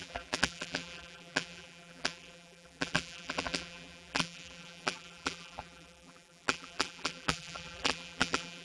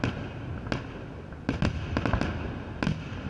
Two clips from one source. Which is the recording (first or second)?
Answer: second